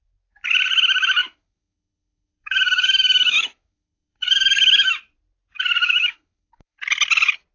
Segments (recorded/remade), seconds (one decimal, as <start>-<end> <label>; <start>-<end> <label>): 0.0-1.2 recorded; 1.2-4.9 remade; 4.9-5.8 recorded; 5.8-6.8 remade; 6.8-7.5 recorded